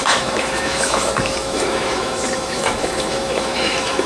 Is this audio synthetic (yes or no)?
yes